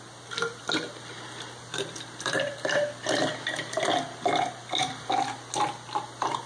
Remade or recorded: recorded